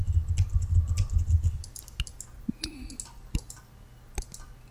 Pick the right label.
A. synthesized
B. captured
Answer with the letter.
B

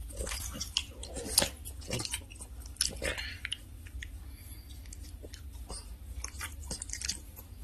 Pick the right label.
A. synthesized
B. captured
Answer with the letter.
B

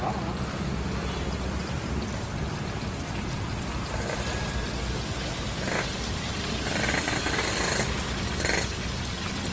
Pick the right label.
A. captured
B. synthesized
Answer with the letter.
A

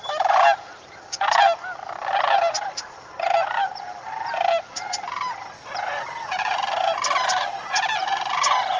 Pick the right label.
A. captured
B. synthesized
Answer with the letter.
A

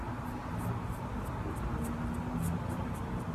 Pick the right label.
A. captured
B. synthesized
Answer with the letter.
A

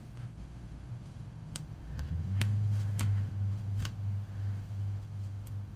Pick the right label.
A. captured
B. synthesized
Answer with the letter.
B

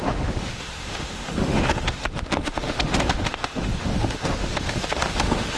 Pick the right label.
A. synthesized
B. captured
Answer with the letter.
A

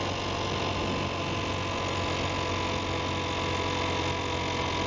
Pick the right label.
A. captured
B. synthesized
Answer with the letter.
A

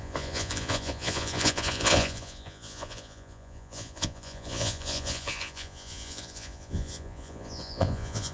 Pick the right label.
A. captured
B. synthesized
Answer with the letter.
B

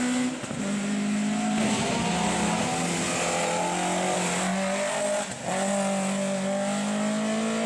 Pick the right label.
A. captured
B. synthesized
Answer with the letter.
A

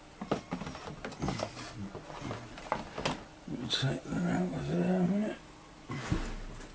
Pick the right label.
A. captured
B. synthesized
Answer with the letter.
A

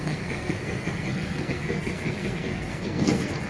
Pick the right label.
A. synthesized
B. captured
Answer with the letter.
A